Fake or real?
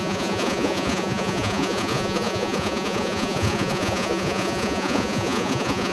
fake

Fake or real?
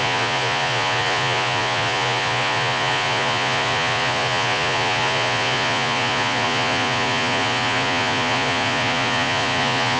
fake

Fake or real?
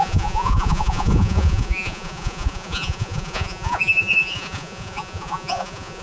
fake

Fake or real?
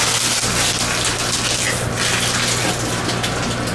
real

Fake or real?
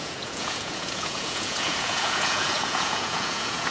fake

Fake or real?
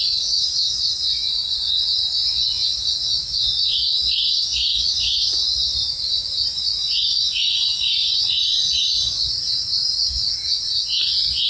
fake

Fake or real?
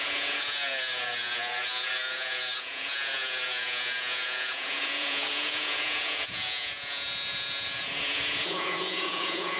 fake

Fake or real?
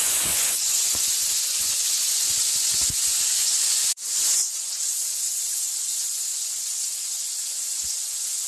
fake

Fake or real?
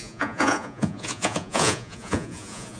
fake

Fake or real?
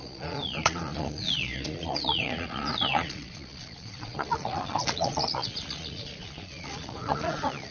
fake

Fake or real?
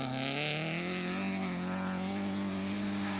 real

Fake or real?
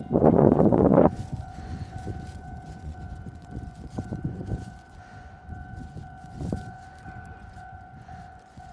fake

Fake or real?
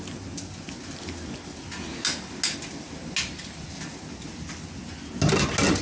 real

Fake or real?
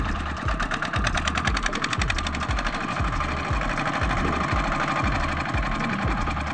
real